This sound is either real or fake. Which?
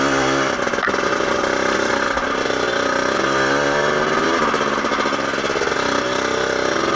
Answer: real